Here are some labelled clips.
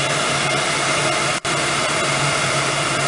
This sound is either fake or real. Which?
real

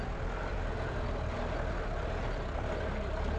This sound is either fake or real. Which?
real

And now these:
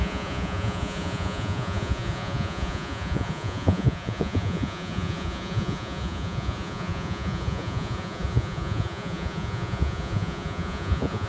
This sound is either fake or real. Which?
fake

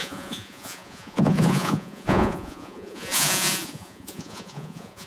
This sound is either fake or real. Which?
fake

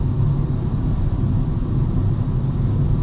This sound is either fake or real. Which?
real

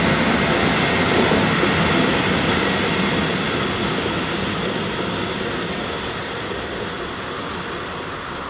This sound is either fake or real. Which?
real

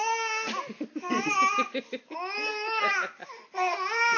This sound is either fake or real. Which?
real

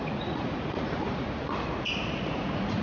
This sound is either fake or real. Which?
fake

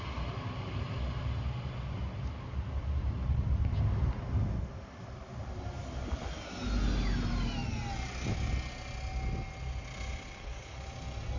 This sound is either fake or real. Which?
real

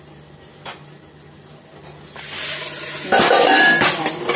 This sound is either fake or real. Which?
real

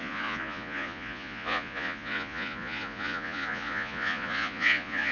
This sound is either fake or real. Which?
fake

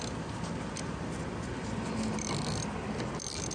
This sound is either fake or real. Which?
real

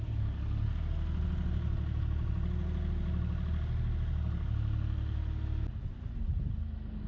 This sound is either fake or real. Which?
real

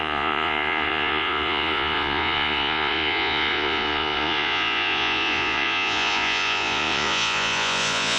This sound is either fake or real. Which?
fake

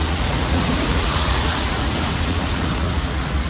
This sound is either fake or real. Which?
fake